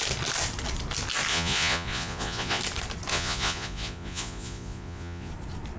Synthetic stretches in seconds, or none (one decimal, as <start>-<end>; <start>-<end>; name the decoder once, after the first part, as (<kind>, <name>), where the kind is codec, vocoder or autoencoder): 1.3-2.6 (vocoder, Vocos); 3.1-5.3